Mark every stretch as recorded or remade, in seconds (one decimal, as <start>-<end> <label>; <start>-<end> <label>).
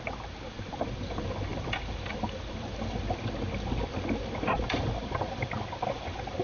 0.0-6.4 recorded